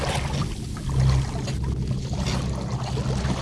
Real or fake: real